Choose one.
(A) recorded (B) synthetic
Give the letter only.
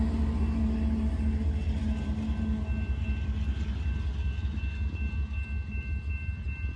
A